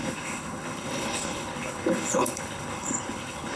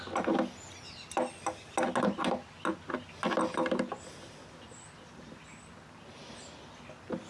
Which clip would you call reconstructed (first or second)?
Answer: first